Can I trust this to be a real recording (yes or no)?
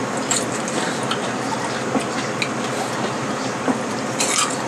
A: yes